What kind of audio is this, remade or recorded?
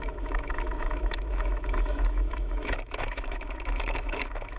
remade